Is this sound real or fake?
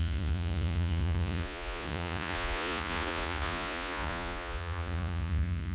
fake